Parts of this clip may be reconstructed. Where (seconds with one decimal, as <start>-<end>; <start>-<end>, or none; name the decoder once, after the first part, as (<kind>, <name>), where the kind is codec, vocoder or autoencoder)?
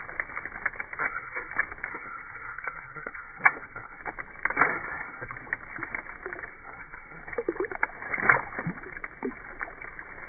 1.0-1.5 (codec, SNAC); 1.9-4.0; 4.7-5.3; 6.5-7.2